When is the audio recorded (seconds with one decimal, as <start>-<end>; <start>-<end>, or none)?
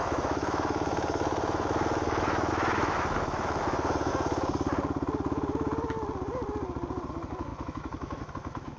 4.1-7.1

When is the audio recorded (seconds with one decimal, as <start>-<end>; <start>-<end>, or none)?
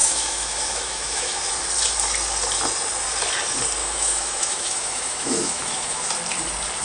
1.5-3.8; 6.1-6.8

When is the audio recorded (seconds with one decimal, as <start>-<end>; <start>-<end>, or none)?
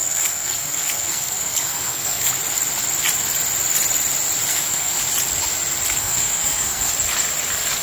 2.3-4.5; 5.0-6.0; 6.9-7.8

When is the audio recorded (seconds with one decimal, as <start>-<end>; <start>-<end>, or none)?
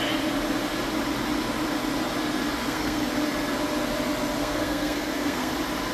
0.0-2.6; 3.1-4.4; 5.5-5.9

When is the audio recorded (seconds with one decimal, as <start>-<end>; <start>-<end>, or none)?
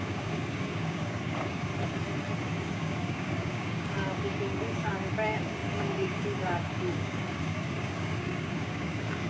1.7-2.4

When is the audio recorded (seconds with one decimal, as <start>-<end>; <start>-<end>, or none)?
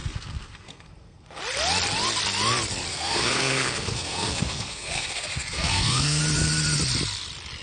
1.4-2.9; 6.2-7.6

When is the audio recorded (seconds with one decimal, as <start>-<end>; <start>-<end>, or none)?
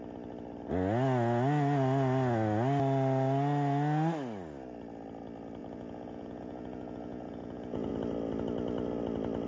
0.0-5.6; 7.9-9.5